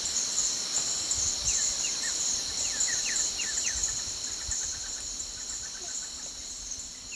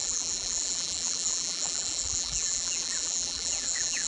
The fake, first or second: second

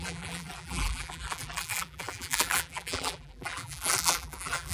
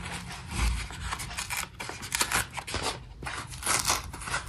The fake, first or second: first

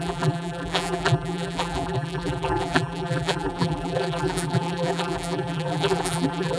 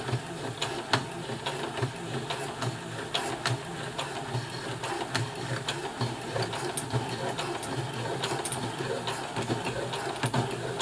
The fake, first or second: first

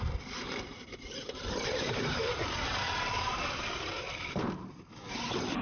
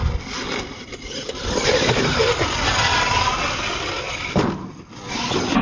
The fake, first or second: first